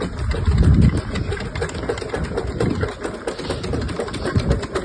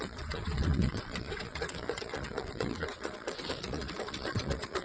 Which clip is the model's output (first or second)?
second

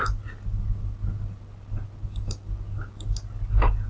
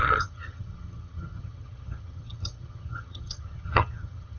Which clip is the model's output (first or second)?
second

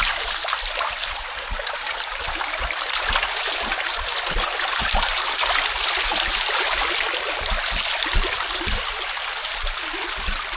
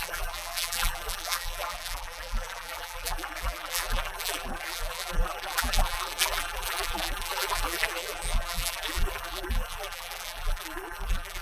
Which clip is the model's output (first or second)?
second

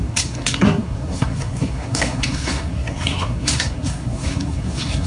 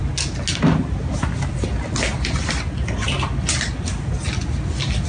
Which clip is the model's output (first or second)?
first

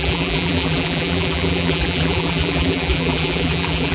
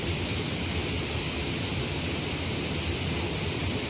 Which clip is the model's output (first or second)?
first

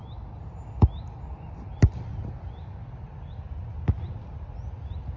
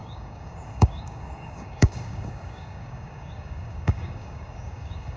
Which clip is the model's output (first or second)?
second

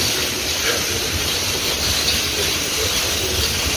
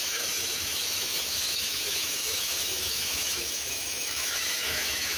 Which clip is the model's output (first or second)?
second